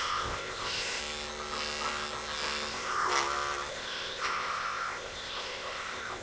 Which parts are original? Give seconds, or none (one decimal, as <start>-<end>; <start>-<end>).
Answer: 1.0-2.7; 3.1-3.7